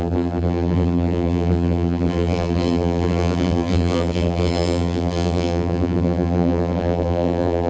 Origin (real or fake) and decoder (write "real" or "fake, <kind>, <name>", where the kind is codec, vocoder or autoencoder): fake, vocoder, BigVGAN v2